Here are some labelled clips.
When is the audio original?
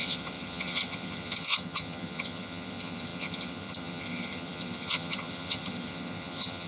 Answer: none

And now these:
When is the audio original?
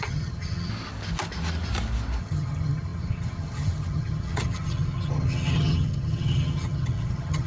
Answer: 0.7-2.2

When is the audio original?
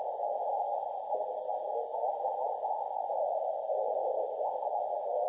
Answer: 0.0-5.3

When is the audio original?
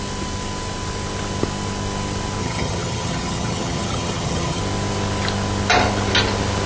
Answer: 0.0-2.4; 4.6-6.7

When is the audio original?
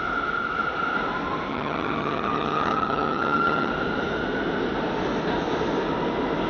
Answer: 0.0-1.5; 3.7-6.5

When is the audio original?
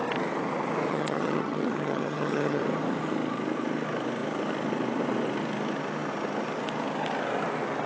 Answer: 0.0-0.9; 2.6-7.9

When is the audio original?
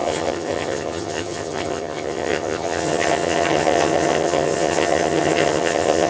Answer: none